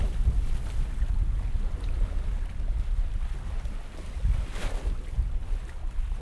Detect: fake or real real